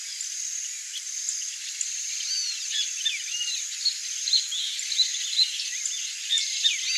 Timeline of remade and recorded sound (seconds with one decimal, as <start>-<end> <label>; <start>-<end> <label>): 0.0-1.9 recorded; 1.9-7.0 remade